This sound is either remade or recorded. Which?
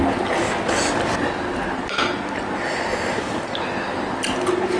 recorded